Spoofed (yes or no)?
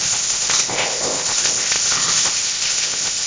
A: yes